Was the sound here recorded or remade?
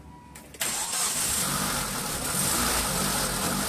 recorded